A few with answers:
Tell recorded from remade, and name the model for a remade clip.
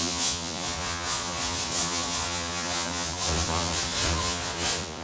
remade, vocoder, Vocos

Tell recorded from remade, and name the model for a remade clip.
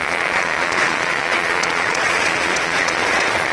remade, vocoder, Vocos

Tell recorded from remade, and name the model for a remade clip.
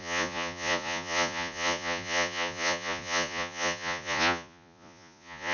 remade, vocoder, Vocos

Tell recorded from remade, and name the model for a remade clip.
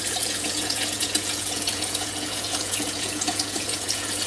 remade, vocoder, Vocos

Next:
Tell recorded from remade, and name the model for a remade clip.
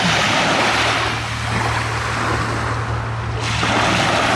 recorded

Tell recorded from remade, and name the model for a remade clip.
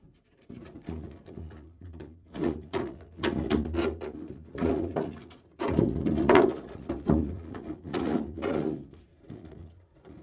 remade, vocoder, Vocos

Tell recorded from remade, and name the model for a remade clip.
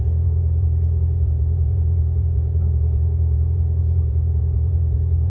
remade, vocoder, Vocos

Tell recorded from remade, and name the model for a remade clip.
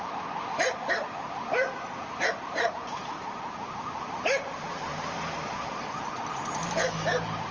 recorded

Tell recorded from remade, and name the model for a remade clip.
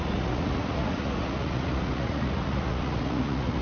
remade, vocoder, Vocos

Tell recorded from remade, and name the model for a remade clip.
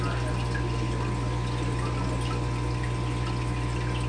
recorded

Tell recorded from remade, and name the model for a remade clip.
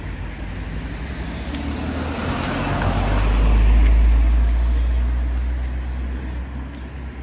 recorded